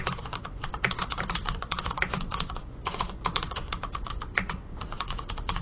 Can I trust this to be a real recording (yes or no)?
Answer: no